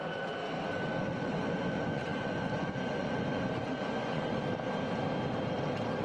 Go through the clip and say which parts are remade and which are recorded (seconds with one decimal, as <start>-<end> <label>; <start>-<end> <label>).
0.0-0.4 remade; 0.4-1.0 recorded; 1.0-4.4 remade; 4.4-6.0 recorded